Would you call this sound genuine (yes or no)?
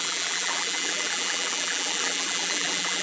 no